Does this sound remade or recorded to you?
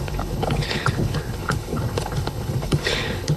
remade